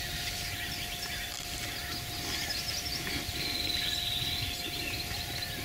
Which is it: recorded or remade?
recorded